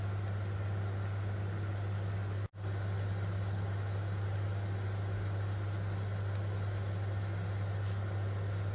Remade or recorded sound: recorded